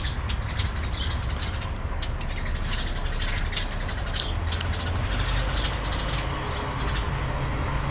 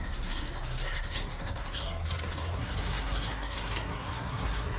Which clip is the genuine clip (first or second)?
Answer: first